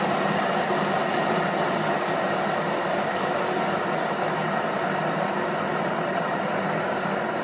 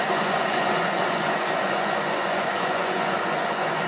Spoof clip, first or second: second